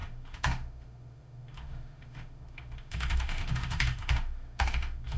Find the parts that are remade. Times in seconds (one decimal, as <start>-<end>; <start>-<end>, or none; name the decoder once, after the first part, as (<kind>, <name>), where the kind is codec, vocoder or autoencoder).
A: 0.0-5.2 (autoencoder, DAC-VAE)